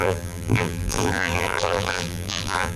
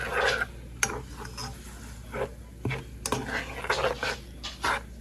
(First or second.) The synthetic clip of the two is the first